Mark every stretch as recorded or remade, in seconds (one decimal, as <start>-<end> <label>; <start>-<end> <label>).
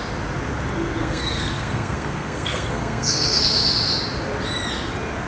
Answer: 0.0-1.0 recorded; 1.0-3.4 remade; 3.4-5.3 recorded